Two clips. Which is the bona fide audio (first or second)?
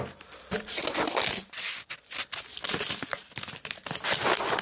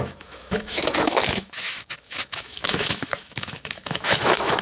first